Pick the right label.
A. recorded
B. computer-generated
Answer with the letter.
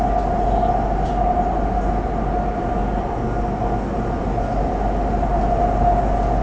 A